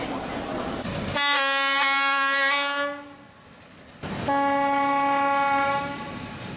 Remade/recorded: recorded